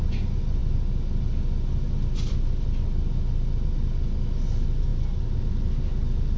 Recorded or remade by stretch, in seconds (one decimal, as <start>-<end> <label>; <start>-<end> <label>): 0.0-6.4 recorded